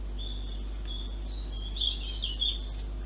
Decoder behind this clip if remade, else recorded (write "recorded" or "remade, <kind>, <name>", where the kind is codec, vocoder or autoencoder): recorded